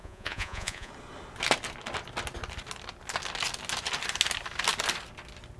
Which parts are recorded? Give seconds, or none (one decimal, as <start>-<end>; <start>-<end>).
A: 0.9-5.6